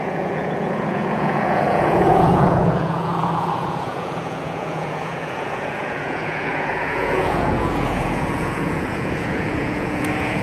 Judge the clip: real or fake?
fake